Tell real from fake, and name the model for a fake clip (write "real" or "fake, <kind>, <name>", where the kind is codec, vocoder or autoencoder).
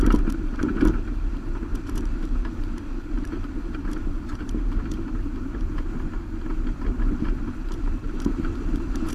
fake, vocoder, BigVGAN v2